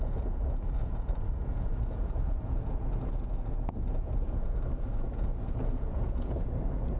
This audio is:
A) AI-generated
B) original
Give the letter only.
A